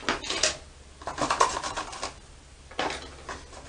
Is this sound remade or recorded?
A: recorded